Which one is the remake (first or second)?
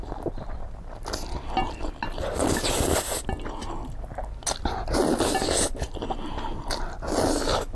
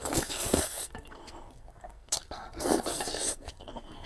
second